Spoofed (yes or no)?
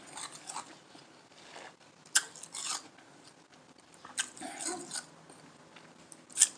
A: no